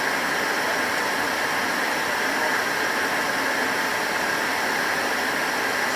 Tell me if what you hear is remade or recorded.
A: recorded